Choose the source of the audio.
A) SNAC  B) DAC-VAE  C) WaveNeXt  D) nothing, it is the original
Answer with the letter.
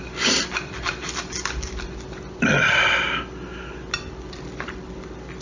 D